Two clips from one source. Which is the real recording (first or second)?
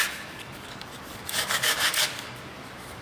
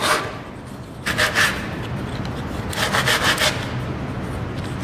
second